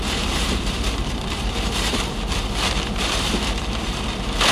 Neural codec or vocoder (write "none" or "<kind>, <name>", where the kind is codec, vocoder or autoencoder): vocoder, BigVGAN v2